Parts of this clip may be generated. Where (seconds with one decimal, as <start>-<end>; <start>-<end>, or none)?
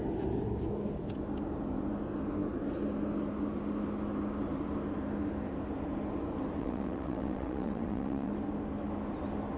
6.6-8.3